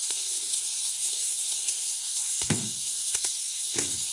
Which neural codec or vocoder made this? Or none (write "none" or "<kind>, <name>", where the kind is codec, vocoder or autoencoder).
codec, SNAC